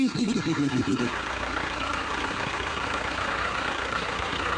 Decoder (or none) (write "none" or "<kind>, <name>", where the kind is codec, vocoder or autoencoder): codec, SNAC